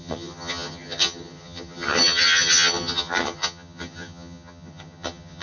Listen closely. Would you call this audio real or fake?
fake